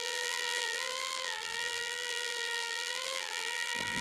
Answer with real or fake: fake